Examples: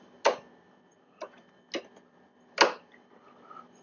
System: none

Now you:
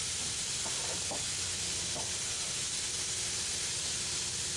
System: none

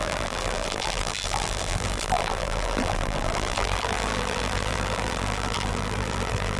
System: vocoder, BigVGAN v2